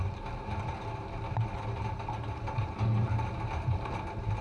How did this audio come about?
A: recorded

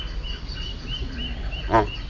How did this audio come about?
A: recorded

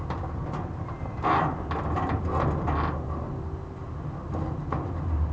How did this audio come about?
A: recorded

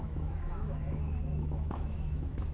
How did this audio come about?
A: remade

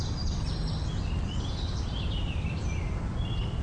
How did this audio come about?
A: recorded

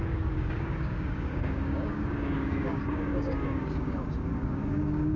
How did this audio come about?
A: remade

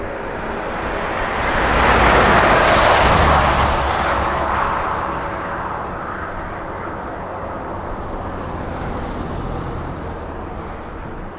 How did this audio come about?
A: recorded